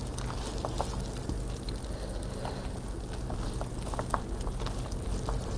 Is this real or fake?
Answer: real